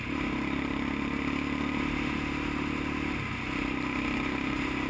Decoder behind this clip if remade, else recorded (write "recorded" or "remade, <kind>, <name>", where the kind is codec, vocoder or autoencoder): recorded